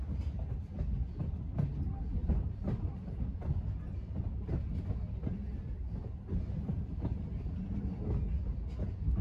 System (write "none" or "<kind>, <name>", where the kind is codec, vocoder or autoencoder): none